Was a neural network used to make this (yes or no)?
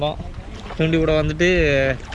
no